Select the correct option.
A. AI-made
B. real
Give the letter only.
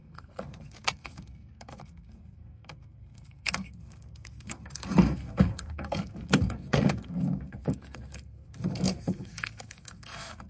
A